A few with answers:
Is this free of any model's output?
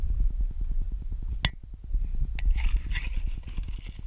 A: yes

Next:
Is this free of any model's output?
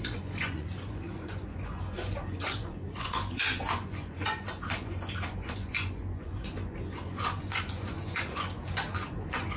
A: no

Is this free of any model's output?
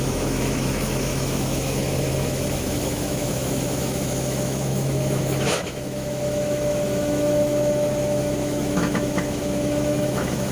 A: no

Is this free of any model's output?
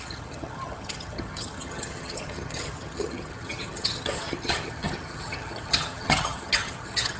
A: no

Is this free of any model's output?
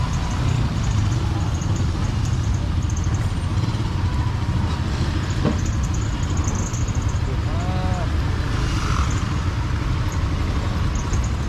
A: yes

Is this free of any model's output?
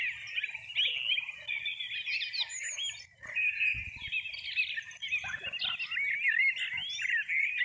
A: yes